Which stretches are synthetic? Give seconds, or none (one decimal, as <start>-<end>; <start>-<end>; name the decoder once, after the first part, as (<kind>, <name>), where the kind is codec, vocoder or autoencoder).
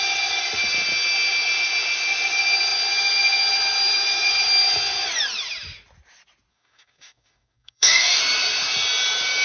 6.5-8.2 (codec, DAC)